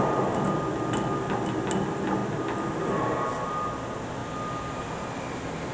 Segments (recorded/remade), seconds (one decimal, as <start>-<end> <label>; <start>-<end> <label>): 0.0-5.7 recorded